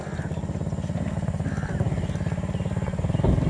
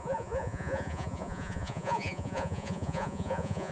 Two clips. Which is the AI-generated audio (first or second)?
second